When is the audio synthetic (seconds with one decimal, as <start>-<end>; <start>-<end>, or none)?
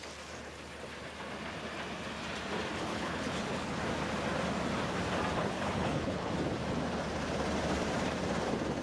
2.9-3.8; 5.4-6.3